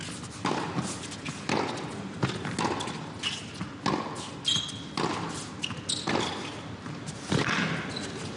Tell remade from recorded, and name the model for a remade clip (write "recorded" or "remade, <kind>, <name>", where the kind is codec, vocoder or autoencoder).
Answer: recorded